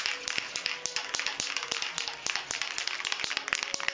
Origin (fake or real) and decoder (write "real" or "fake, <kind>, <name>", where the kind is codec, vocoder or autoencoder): real